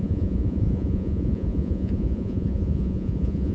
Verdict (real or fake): fake